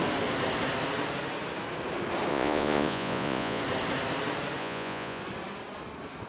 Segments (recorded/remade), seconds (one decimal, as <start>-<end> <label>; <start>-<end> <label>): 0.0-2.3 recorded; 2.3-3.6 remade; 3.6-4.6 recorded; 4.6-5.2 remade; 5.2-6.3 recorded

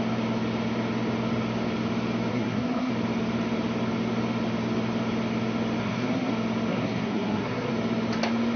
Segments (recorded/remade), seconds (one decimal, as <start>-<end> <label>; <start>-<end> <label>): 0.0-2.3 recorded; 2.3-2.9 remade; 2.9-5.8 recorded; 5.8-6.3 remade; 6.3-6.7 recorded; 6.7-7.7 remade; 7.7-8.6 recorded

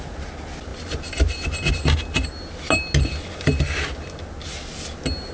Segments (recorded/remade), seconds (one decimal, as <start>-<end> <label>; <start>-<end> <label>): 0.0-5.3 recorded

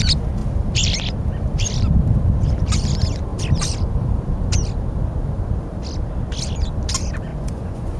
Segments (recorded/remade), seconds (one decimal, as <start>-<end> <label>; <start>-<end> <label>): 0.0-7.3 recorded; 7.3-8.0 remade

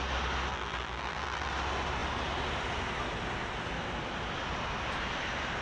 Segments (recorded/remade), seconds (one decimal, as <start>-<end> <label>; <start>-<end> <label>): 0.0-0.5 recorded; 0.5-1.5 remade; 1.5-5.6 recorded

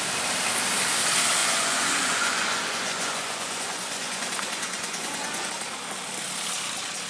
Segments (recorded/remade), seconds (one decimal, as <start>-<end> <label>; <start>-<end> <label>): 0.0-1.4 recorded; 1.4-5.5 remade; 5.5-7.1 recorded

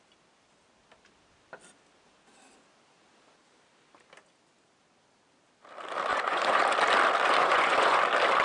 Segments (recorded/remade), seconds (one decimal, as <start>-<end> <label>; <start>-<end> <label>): 0.0-6.1 recorded; 6.1-6.6 remade; 6.6-7.4 recorded; 7.4-8.0 remade; 8.0-8.4 recorded

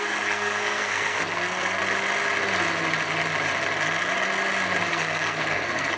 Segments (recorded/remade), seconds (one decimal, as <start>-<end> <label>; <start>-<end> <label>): 0.0-1.8 remade; 1.8-4.9 recorded; 4.9-6.0 remade